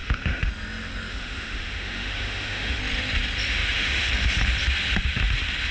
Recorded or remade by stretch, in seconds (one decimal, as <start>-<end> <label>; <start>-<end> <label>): 0.0-0.5 remade; 0.5-1.1 recorded; 1.1-2.8 remade; 2.8-3.5 recorded; 3.5-4.1 remade; 4.1-5.7 recorded